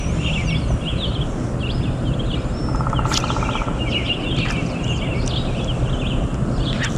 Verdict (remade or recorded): recorded